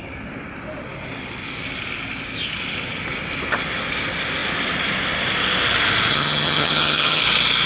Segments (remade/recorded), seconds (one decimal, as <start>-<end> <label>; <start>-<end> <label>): 0.0-6.1 recorded; 6.1-7.2 remade; 7.2-7.7 recorded